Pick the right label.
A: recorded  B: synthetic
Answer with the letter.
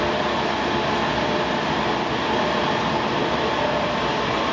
B